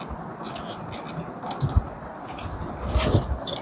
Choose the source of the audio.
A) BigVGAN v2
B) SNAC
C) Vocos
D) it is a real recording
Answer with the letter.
D